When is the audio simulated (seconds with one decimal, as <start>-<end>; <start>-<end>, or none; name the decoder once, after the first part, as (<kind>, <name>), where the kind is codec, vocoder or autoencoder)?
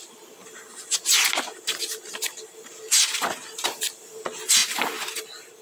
none